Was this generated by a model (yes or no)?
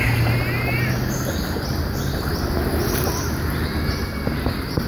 no